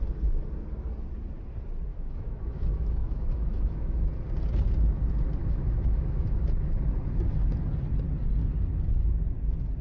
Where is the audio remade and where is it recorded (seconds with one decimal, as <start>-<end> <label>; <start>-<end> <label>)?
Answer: 0.0-1.9 recorded; 1.9-4.1 remade; 4.1-5.4 recorded; 5.4-6.4 remade; 6.4-9.8 recorded